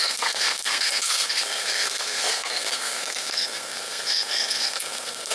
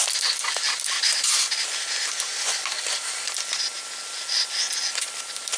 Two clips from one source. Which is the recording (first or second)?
second